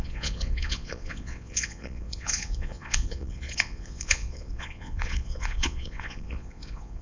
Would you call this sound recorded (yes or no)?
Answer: no